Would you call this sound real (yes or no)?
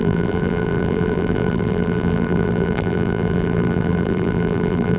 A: no